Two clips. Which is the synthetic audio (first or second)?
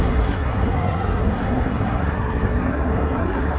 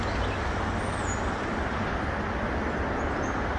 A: first